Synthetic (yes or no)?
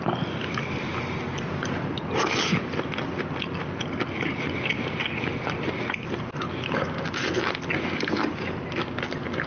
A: no